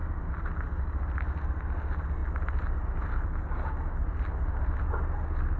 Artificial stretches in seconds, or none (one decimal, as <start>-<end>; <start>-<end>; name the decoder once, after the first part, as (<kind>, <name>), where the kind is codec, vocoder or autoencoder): none